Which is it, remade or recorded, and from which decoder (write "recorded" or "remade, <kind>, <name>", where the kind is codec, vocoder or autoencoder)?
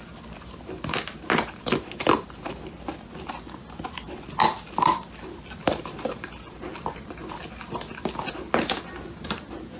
recorded